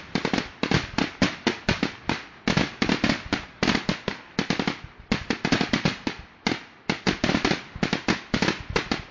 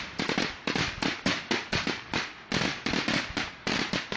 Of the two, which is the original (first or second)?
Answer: first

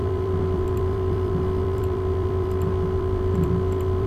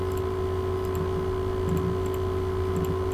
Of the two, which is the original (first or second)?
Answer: second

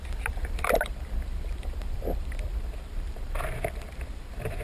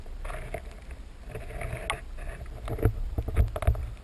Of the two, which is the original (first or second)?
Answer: second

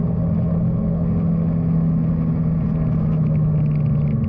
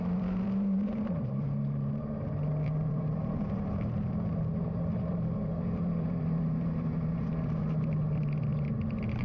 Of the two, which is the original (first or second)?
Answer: first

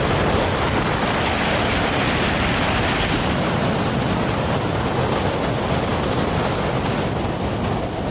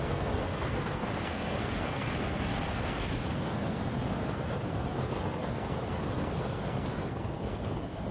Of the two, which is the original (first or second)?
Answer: first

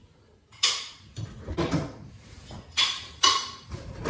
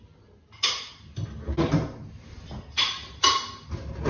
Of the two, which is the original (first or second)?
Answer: second